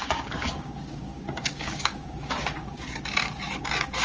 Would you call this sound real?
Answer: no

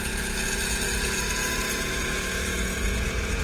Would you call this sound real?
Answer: no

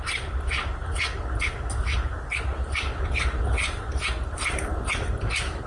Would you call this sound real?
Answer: yes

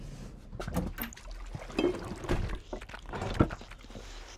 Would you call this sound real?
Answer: yes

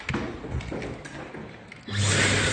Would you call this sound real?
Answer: yes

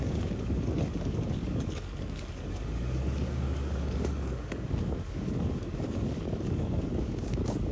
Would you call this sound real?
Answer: no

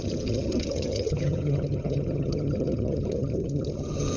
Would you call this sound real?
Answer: no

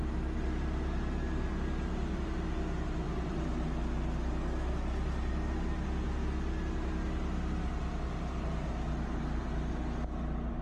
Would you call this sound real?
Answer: yes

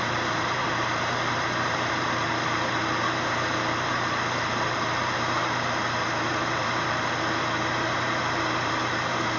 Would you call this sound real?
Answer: no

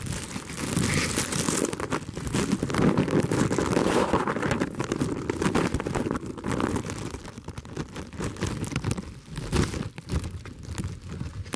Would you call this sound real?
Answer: no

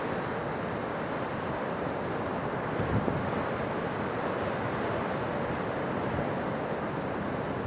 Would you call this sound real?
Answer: yes